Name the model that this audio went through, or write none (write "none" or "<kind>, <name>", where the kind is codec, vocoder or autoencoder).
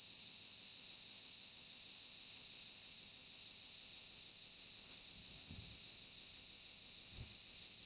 codec, ZipCodec